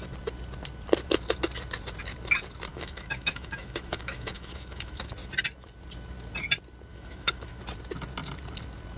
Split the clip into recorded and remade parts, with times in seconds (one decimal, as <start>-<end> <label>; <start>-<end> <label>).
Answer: 0.0-2.7 recorded; 2.7-5.1 remade; 5.1-6.9 recorded; 6.9-7.6 remade; 7.6-9.0 recorded